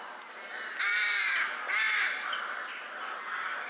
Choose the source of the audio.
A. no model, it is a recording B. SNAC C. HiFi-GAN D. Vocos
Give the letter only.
A